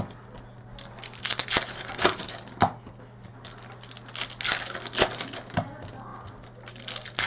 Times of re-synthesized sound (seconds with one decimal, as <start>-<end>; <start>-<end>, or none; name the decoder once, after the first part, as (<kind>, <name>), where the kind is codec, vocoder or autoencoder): 1.4-2.4 (vocoder, BigVGAN v2)